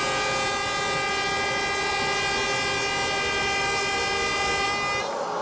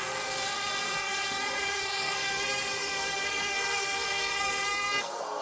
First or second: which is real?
first